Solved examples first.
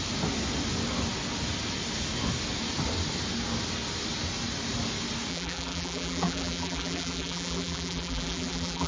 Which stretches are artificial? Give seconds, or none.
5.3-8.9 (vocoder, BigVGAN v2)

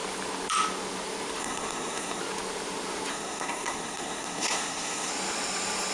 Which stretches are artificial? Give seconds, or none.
1.4-2.2 (codec, SNAC); 3.1-5.1

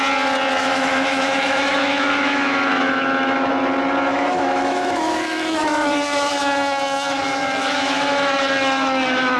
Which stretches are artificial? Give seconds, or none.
0.6-3.5 (autoencoder, DAC-VAE); 4.1-9.4

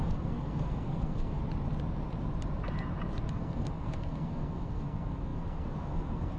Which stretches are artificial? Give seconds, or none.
0.0-1.4 (codec, SNAC); 3.3-6.4

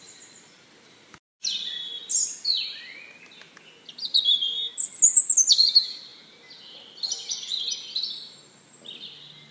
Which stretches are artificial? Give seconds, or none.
none

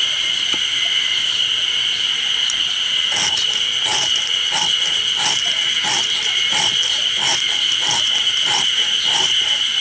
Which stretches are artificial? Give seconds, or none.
none

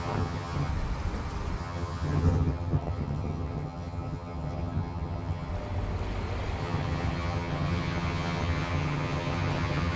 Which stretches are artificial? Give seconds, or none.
0.0-0.7 (vocoder, HiFi-GAN); 1.6-5.5; 6.6-10.0

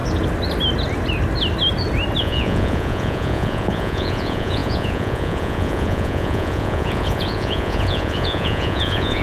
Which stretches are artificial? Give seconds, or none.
2.2-9.2 (vocoder, Vocos)